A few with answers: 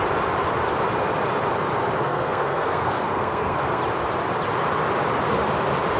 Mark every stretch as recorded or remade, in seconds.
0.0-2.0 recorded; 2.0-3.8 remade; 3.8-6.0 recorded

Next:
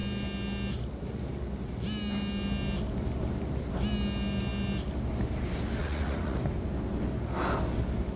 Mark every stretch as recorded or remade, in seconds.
0.0-5.8 recorded; 5.8-6.4 remade; 6.4-8.2 recorded